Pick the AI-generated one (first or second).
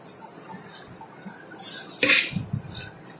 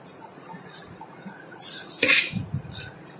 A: second